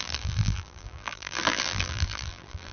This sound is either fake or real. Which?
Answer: fake